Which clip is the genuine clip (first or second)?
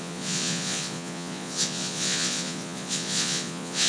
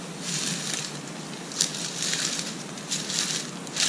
second